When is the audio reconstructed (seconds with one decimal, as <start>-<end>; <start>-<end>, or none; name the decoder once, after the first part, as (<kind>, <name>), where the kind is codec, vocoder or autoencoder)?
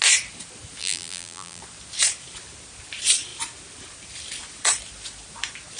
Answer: 0.8-1.6 (vocoder, BigVGAN v2)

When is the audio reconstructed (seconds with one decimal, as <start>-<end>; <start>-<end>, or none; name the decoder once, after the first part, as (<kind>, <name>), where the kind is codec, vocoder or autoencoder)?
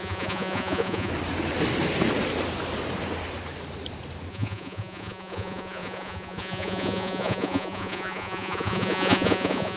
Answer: 0.0-1.1 (vocoder, Vocos); 4.3-9.8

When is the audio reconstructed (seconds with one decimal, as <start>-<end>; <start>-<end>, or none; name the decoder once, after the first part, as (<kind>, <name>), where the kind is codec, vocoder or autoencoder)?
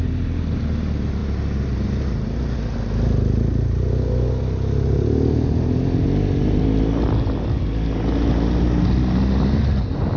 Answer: none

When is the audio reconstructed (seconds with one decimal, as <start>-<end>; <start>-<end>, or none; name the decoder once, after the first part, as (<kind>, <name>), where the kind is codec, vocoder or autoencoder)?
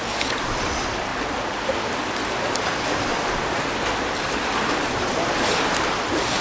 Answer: 1.1-1.7 (vocoder, BigVGAN v2)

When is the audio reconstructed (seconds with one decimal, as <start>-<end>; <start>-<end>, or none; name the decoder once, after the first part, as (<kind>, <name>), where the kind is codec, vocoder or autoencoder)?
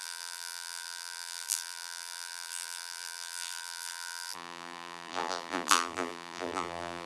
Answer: 0.0-7.1 (vocoder, BigVGAN v2)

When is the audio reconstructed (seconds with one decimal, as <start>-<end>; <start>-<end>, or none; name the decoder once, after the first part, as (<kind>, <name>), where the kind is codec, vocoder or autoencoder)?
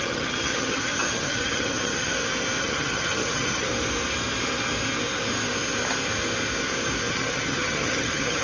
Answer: 0.0-2.1 (vocoder, HiFi-GAN); 2.6-3.7; 7.1-8.4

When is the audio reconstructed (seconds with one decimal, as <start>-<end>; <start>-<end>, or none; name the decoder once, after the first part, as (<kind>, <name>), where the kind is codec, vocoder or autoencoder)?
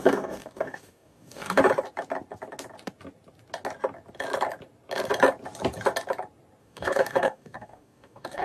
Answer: 0.0-1.6 (codec, DAC); 6.6-8.4